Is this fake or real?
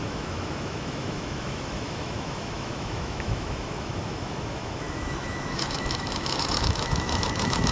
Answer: fake